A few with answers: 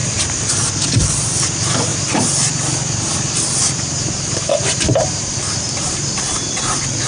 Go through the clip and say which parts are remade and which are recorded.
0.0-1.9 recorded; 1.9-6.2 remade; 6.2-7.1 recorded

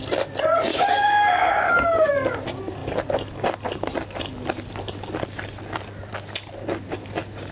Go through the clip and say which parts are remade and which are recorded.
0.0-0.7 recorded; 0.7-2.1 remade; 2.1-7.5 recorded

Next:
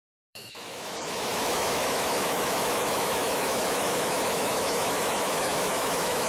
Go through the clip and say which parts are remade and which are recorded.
0.0-6.3 remade

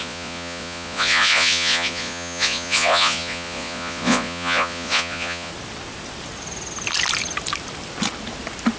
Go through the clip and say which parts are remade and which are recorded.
0.0-5.5 remade; 5.5-8.8 recorded

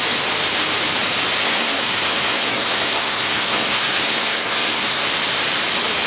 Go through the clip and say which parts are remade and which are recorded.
0.0-1.4 recorded; 1.4-5.1 remade; 5.1-6.1 recorded

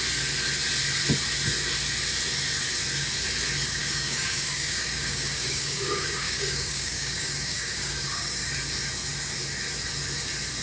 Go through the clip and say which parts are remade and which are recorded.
0.0-3.8 recorded; 3.8-8.5 remade; 8.5-10.6 recorded

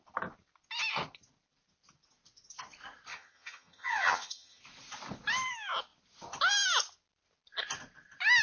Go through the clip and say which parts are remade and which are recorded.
0.0-3.1 recorded; 3.1-4.6 remade; 4.6-8.4 recorded

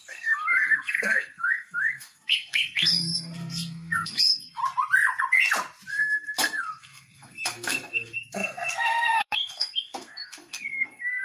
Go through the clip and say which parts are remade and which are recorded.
0.0-4.6 remade; 4.6-5.9 recorded; 5.9-11.2 remade